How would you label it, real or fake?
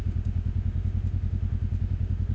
fake